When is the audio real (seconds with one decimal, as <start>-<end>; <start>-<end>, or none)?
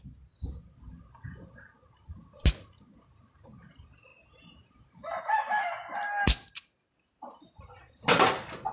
0.0-8.7